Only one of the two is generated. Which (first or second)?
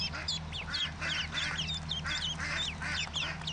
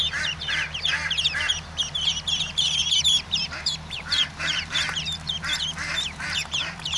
second